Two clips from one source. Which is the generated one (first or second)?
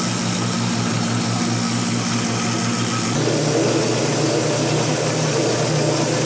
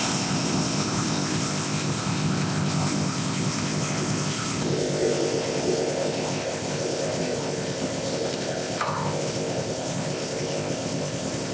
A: second